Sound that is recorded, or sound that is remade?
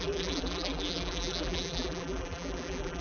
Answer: remade